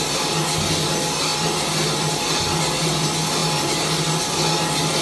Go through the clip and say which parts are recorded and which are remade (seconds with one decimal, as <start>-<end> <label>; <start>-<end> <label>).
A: 0.0-5.0 recorded